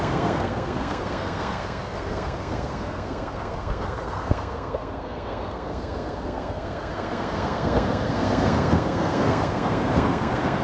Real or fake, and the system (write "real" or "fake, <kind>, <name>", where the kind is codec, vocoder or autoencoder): fake, codec, SNAC